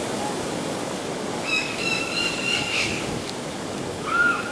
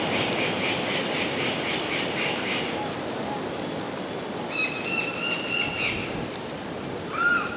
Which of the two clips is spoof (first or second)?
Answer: first